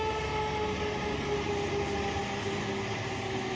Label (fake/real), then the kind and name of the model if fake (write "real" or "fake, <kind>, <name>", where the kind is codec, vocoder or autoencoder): real